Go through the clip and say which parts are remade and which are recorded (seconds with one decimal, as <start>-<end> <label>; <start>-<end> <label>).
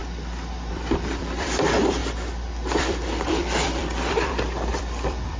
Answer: 0.0-0.7 recorded; 0.7-2.0 remade; 2.0-2.8 recorded; 2.8-5.4 remade